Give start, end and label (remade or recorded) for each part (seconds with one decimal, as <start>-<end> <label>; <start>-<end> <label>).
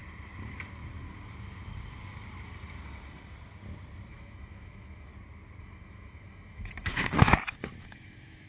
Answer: 0.0-4.1 recorded; 4.1-5.1 remade; 5.1-5.6 recorded; 5.6-6.9 remade; 6.9-7.8 recorded; 7.8-8.5 remade